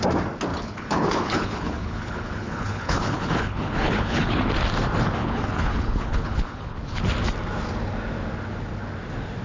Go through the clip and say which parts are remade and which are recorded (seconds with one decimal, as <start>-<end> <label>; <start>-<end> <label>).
0.0-0.5 recorded; 0.5-4.5 remade; 4.5-5.2 recorded; 5.2-7.0 remade; 7.0-9.4 recorded